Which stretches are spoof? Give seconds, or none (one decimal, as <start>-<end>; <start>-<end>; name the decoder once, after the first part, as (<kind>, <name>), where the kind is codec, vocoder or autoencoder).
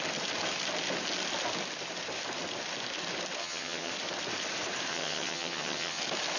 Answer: 3.4-3.9 (vocoder, HiFi-GAN); 4.9-6.0